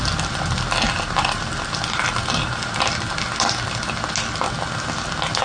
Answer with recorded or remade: recorded